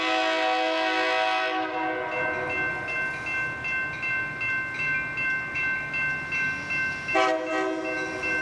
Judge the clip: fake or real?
real